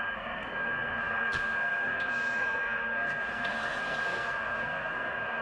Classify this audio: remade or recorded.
remade